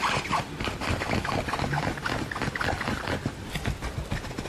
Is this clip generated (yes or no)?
no